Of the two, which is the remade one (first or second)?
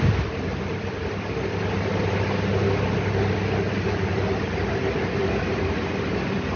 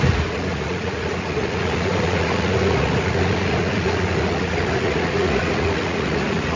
second